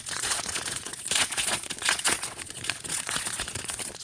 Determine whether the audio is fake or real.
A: fake